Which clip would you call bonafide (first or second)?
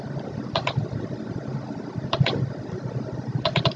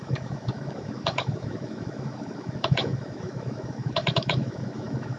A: first